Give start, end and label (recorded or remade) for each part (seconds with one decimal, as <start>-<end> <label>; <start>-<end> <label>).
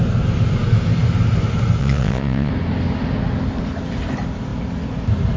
0.0-1.8 recorded; 1.8-2.5 remade; 2.5-5.4 recorded